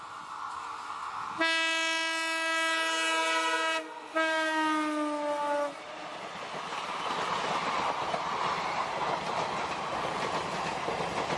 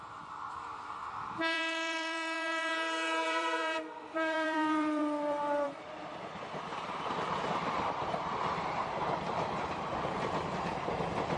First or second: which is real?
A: first